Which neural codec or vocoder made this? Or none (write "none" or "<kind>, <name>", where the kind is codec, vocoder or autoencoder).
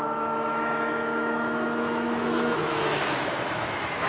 autoencoder, DAC-VAE